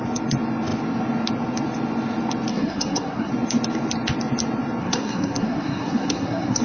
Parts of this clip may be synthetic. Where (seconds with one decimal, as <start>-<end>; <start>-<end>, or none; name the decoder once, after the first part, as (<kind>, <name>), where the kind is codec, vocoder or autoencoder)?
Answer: 2.5-3.3 (codec, SNAC); 4.8-6.6